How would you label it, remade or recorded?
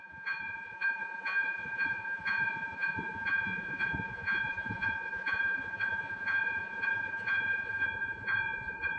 remade